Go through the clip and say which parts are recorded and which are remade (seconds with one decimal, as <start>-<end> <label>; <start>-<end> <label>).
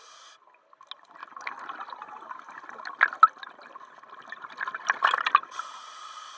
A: 0.0-6.4 recorded